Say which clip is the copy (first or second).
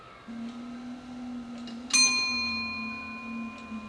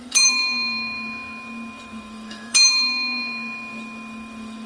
second